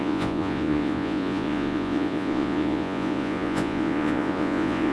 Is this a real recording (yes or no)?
no